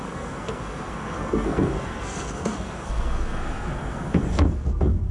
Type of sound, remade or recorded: remade